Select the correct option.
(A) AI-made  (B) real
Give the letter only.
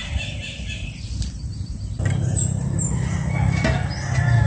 B